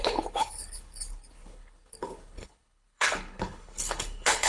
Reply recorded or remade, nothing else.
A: remade